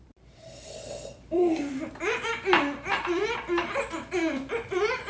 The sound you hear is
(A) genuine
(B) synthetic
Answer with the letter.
B